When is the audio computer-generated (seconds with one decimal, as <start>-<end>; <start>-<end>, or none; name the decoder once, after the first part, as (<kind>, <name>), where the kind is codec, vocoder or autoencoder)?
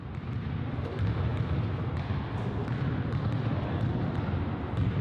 1.3-4.3 (vocoder, BigVGAN v2)